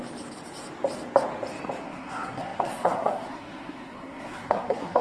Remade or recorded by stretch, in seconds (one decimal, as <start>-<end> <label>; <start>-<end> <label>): 0.0-1.8 recorded; 1.8-5.0 remade